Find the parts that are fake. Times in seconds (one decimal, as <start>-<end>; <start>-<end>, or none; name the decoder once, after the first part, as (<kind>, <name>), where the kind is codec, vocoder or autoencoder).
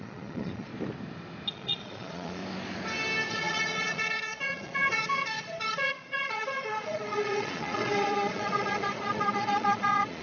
0.0-0.7 (vocoder, Vocos); 1.5-2.4; 3.3-10.2